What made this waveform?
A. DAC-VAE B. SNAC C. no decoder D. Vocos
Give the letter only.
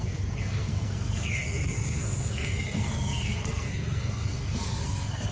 B